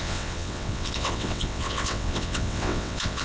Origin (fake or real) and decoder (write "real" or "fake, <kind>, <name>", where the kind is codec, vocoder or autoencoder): fake, vocoder, WaveNeXt